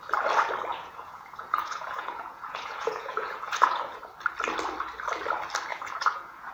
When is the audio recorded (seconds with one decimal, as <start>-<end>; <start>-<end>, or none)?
0.0-0.7; 4.0-5.7